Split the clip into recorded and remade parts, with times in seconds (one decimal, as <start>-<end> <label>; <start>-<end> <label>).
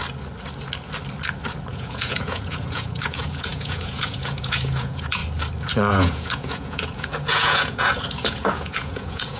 0.0-1.7 recorded; 1.7-5.2 remade; 5.2-5.9 recorded; 5.9-9.4 remade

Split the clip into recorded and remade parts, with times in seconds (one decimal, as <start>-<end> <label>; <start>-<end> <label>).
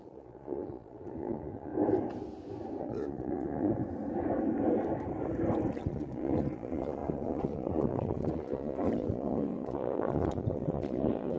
0.0-1.7 remade; 1.7-2.8 recorded; 2.8-3.8 remade; 3.8-5.7 recorded; 5.7-11.4 remade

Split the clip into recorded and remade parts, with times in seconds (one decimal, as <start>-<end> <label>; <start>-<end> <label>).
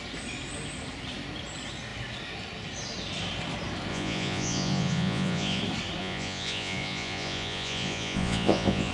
0.0-3.9 recorded; 3.9-5.6 remade; 5.6-6.0 recorded; 6.0-8.9 remade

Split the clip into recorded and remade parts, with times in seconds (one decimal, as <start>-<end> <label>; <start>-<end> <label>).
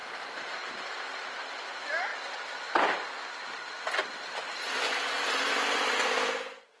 0.0-6.8 recorded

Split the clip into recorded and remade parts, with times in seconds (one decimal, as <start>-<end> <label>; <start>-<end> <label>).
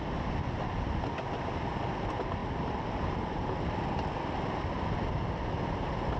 0.0-6.2 recorded